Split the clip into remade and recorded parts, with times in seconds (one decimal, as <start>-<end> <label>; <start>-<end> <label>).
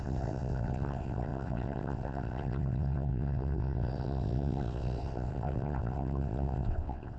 0.0-7.2 remade